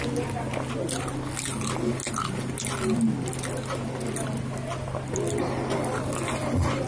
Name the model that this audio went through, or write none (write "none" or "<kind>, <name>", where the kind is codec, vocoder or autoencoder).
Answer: none